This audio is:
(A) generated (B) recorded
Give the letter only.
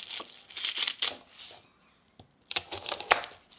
B